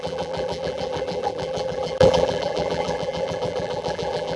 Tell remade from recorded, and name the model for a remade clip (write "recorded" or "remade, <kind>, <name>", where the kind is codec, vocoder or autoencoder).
remade, vocoder, BigVGAN v2